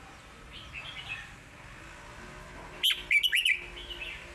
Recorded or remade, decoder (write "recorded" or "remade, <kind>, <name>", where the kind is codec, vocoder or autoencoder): recorded